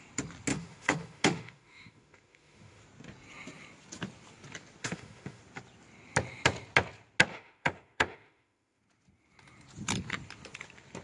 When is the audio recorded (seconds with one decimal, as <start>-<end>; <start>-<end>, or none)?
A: 0.0-0.5; 2.8-4.8; 5.4-7.3; 8.8-11.0